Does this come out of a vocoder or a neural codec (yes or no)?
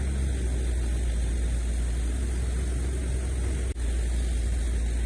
no